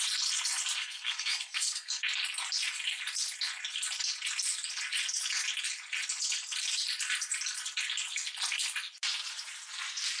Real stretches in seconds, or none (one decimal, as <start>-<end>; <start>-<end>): 0.0-0.8; 2.0-10.2